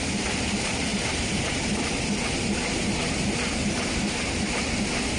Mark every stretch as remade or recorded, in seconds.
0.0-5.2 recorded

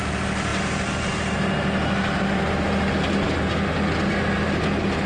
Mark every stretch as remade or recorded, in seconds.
0.0-5.1 recorded

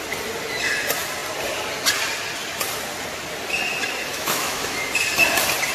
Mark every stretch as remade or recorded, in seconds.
0.0-4.1 recorded; 4.1-4.8 remade; 4.8-5.7 recorded